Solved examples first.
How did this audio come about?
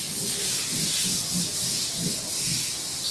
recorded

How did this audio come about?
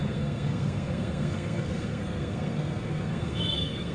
remade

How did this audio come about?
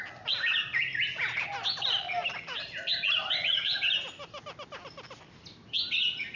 recorded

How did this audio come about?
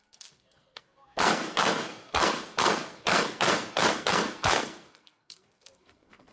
remade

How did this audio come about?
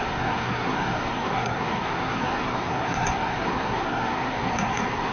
remade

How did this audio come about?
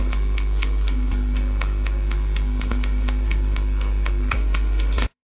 remade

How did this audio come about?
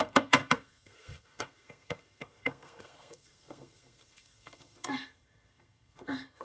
remade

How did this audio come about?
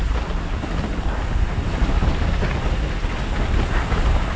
recorded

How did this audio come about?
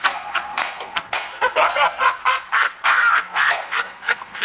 remade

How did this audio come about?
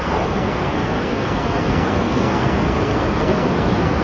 remade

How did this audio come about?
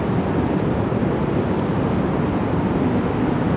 recorded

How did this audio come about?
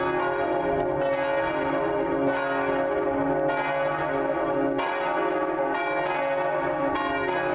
recorded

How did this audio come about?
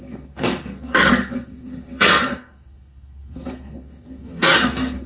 remade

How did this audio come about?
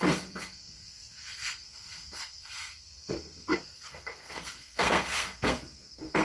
remade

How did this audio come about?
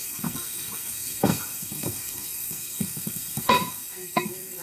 remade